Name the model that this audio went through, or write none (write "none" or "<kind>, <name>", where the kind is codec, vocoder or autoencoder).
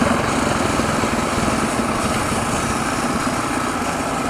none